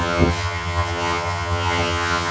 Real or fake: fake